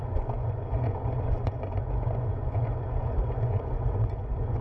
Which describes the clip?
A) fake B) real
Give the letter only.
A